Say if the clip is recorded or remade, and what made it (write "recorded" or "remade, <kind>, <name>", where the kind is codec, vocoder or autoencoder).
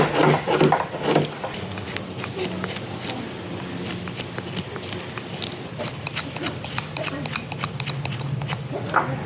recorded